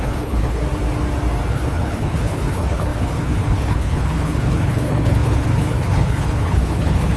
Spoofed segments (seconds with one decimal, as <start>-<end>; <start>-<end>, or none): 0.0-0.6; 1.5-7.2